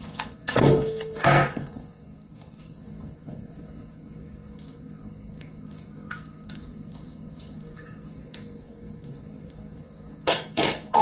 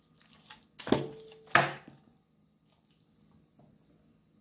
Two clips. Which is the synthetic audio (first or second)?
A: first